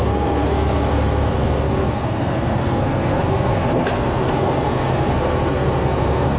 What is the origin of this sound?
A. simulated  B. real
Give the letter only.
A